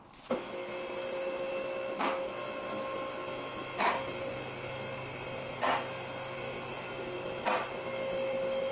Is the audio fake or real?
real